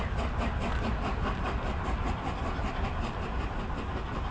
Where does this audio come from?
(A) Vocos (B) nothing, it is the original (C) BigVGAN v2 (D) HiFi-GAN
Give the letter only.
B